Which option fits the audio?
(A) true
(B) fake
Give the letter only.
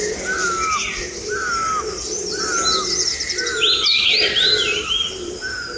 A